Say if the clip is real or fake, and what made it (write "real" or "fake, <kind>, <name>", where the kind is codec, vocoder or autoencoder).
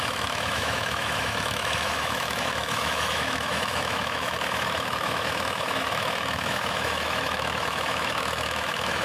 fake, autoencoder, DAC-VAE